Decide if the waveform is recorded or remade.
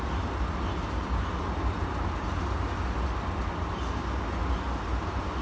recorded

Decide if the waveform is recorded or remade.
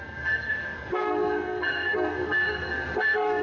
remade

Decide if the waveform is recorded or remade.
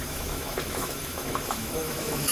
remade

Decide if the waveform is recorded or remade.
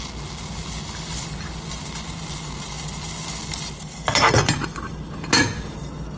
recorded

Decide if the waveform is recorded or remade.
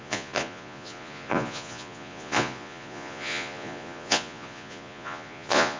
remade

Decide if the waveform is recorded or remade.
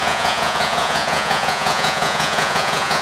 remade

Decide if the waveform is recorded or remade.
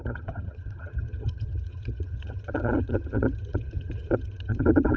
remade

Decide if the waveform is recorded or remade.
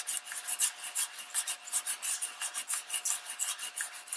recorded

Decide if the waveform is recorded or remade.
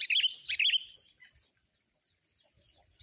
recorded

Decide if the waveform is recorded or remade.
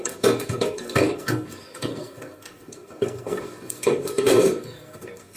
remade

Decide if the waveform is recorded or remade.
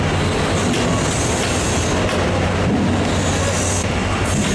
recorded